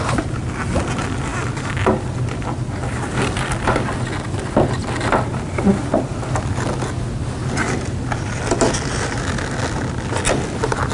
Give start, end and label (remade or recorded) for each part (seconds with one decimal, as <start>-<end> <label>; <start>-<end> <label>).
0.0-10.9 recorded